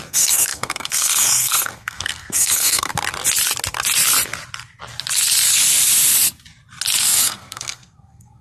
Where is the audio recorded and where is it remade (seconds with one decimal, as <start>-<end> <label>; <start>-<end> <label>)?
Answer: 0.0-2.9 remade; 2.9-7.0 recorded; 7.0-8.4 remade